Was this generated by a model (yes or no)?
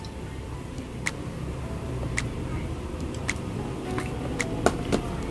no